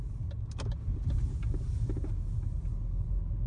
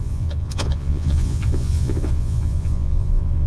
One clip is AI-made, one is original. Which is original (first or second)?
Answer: first